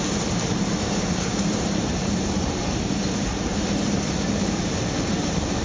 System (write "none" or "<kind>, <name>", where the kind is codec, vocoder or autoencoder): vocoder, BigVGAN v2